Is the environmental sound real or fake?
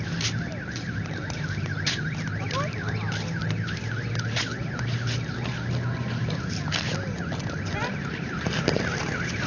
real